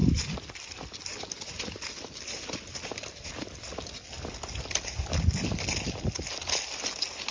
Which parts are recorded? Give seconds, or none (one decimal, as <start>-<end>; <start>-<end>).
0.0-7.3